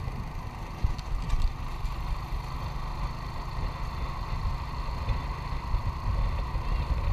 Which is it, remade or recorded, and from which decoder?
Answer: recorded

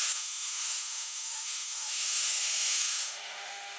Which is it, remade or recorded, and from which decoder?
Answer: remade, autoencoder, DAC-VAE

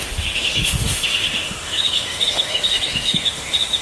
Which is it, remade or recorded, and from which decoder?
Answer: remade, autoencoder, DAC-VAE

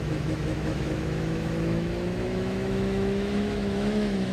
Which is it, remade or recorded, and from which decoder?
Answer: remade, autoencoder, DAC-VAE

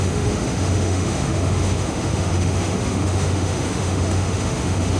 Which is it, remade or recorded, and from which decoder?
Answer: remade, autoencoder, DAC-VAE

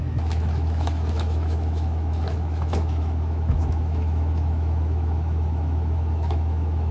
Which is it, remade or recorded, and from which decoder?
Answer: remade, autoencoder, DAC-VAE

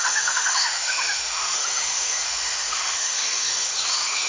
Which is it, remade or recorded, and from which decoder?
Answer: remade, autoencoder, DAC-VAE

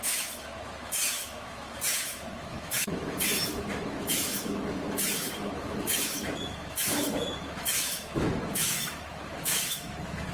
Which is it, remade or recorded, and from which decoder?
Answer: remade, autoencoder, DAC-VAE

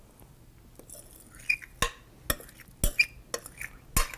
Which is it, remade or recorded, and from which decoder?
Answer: recorded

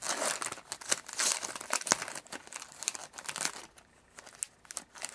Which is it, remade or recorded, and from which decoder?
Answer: recorded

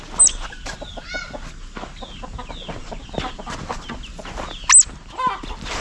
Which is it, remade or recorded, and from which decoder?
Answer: recorded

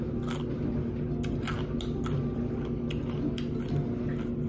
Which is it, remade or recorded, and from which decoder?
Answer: recorded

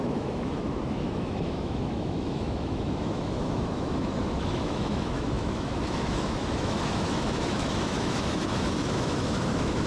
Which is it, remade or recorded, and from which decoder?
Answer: remade, autoencoder, DAC-VAE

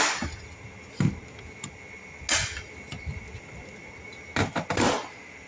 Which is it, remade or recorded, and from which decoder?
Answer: recorded